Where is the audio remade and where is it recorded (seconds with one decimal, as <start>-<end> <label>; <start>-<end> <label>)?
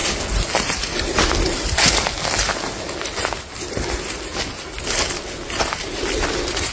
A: 0.0-6.7 recorded